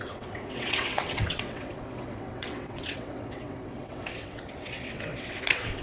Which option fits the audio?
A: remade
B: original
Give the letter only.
A